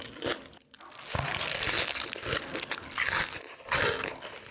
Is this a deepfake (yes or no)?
no